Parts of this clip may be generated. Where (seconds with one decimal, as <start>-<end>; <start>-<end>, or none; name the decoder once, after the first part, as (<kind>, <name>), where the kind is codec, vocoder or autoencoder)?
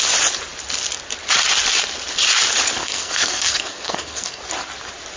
2.8-4.4 (codec, SNAC)